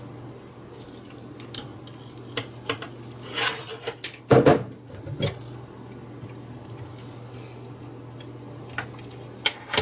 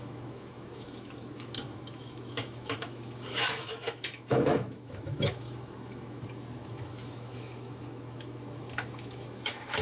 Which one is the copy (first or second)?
second